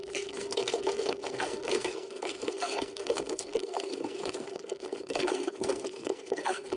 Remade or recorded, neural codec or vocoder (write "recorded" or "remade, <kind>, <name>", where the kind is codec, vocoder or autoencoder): remade, codec, SNAC